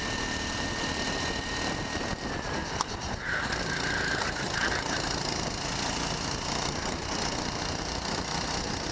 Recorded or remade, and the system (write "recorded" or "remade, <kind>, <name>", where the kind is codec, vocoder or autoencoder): recorded